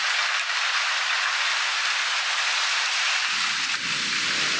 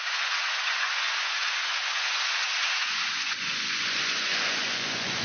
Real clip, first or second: first